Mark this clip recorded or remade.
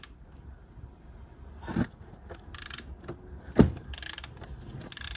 recorded